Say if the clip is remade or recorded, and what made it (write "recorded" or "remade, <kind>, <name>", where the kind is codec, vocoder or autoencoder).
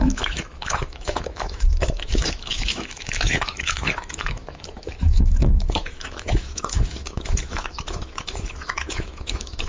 remade, autoencoder, DAC-VAE